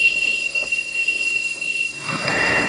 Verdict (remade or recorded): remade